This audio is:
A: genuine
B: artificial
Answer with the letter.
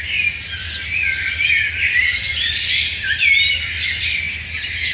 A